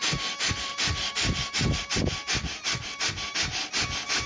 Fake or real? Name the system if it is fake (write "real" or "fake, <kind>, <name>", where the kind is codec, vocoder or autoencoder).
real